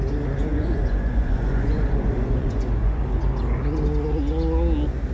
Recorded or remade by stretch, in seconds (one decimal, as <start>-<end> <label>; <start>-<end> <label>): 0.0-0.5 recorded; 0.5-3.0 remade; 3.0-5.1 recorded